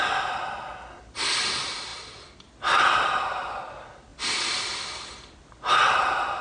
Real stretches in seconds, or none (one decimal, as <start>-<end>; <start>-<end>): 0.0-6.4

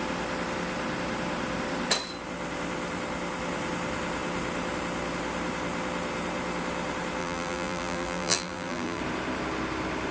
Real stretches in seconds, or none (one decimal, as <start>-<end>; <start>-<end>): 0.0-7.2; 9.0-10.1

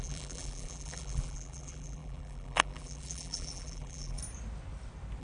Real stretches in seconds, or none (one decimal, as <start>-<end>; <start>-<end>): 4.2-5.2